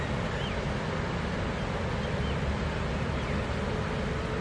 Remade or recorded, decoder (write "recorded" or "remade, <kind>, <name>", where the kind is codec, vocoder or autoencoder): recorded